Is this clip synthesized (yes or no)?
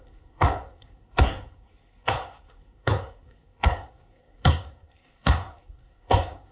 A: yes